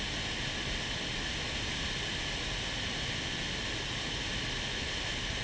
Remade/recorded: recorded